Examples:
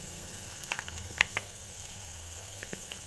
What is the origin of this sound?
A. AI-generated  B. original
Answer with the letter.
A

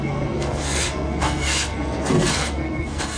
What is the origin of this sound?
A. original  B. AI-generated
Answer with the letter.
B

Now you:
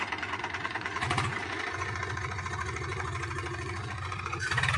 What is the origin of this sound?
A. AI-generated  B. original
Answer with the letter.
A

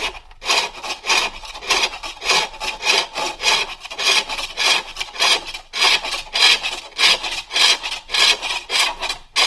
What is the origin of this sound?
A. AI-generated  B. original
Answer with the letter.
B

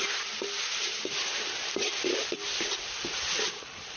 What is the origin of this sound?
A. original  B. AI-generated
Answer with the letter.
A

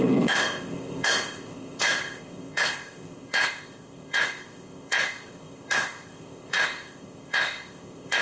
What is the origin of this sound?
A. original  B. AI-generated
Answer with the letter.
B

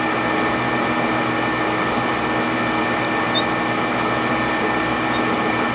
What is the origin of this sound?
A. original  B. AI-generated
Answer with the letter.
A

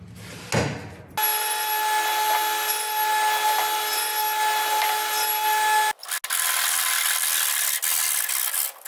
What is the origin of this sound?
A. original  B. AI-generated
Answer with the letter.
A